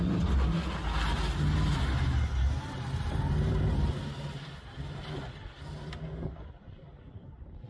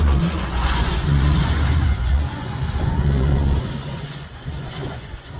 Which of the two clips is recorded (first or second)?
first